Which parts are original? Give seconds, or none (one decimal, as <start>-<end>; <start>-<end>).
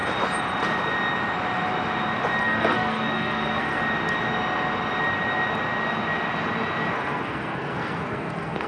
0.0-2.4; 3.8-6.9